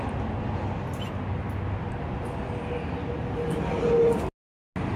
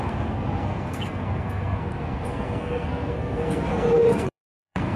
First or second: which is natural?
first